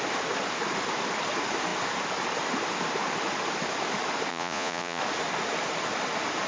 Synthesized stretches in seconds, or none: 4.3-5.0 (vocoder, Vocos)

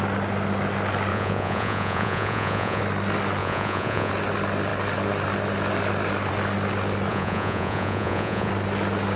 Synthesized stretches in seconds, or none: 1.1-2.8 (vocoder, Vocos); 3.4-4.1; 7.1-8.5

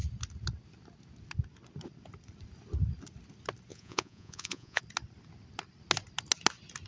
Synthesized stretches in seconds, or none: 3.7-4.8 (vocoder, Vocos)

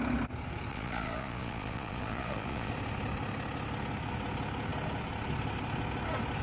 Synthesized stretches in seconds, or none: 0.7-2.7 (vocoder, Vocos)

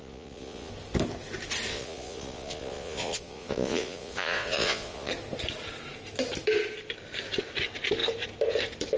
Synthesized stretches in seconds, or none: 0.0-0.7 (vocoder, Vocos); 1.7-5.1